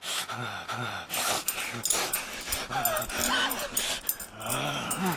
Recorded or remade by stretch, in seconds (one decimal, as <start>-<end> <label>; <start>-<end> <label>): 0.0-4.5 recorded; 4.5-5.2 remade